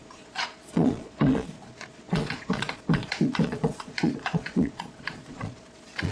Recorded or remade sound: remade